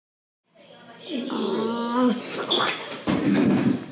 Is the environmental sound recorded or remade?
recorded